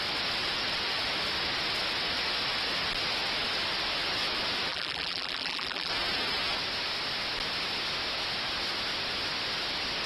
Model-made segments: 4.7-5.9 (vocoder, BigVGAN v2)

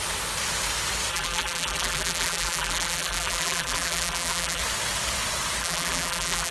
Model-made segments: 1.1-4.6 (vocoder, BigVGAN v2); 5.6-6.5